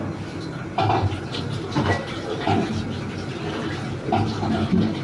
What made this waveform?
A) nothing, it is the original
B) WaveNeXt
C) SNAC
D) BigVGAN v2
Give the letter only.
A